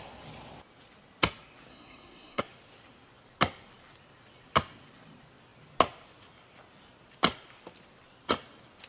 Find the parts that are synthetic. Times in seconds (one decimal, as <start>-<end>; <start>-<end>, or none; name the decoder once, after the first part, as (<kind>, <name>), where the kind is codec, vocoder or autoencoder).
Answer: 1.7-2.4 (codec, SNAC)